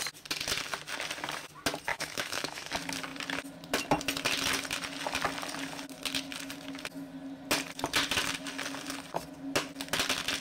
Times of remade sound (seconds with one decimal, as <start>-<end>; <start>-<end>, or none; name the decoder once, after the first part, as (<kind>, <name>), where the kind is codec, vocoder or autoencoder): 1.9-2.7 (autoencoder, DAC-VAE)

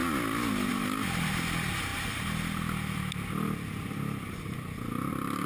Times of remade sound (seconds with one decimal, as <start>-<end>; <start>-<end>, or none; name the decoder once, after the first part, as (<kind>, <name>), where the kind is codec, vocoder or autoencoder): none

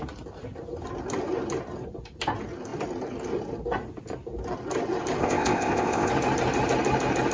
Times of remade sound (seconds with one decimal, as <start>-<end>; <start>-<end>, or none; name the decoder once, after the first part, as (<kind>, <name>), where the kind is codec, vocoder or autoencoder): 5.2-6.1 (codec, ZipCodec)